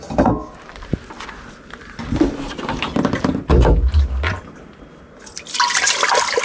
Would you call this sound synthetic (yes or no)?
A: no